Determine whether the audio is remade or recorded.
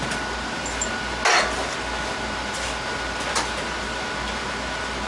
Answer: recorded